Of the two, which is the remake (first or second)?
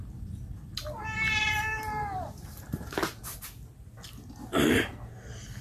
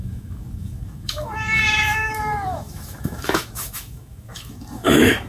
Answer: second